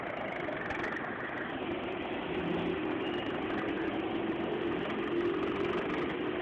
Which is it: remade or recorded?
recorded